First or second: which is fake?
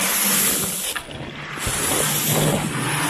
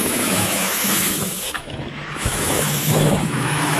second